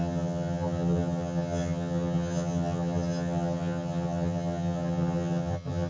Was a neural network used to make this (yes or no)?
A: yes